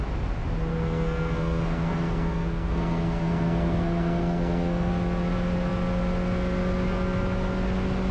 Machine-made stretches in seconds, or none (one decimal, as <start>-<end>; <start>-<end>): 0.7-4.9